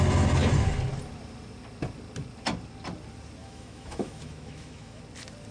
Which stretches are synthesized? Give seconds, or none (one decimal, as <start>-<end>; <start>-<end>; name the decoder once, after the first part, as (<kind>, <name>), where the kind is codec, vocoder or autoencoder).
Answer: 3.4-5.0 (autoencoder, DAC-VAE)